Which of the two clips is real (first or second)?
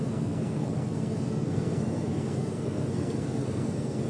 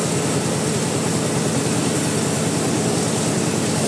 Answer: second